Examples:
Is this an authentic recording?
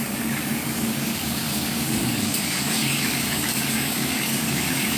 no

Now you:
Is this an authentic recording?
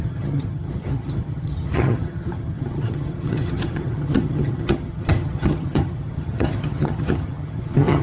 no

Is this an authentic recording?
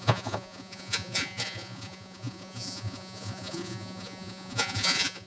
no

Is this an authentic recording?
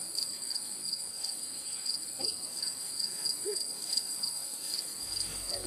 no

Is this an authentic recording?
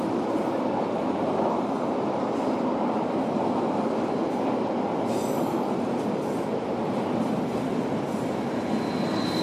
yes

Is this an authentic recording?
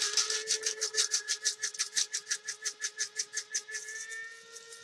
yes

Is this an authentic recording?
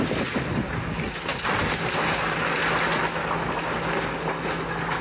yes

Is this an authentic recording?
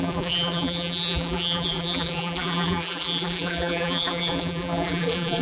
no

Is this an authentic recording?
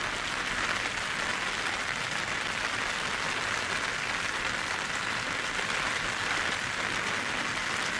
yes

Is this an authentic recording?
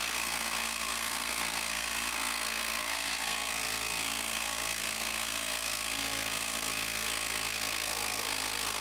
no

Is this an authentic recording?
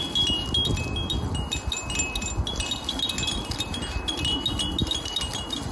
yes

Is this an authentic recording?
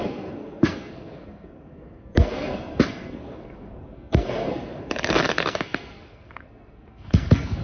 no